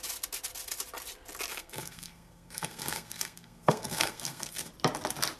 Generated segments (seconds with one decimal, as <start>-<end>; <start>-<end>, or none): 1.5-4.7